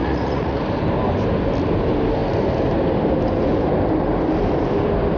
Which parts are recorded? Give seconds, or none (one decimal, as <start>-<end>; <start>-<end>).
0.6-5.2